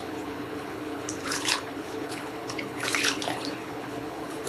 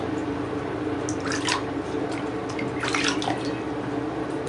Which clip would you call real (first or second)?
second